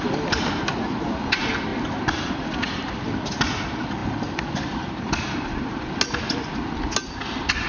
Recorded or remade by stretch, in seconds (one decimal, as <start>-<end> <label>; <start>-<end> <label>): 0.0-7.7 recorded